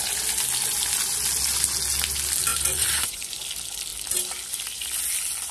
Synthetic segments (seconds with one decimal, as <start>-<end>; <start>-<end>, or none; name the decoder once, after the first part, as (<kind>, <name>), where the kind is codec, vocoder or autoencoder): 2.5-3.4 (vocoder, Vocos)